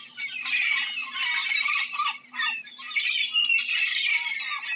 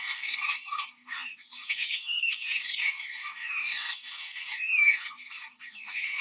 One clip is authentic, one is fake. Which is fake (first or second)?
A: second